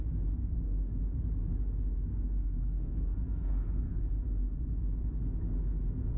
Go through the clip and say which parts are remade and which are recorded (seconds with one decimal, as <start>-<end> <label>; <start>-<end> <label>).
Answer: 0.0-0.4 recorded; 0.4-0.9 remade; 0.9-2.1 recorded; 2.1-4.0 remade; 4.0-6.2 recorded